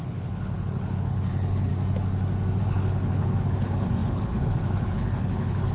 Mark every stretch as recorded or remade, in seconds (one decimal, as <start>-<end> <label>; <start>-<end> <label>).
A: 0.0-1.7 remade; 1.7-2.6 recorded; 2.6-5.7 remade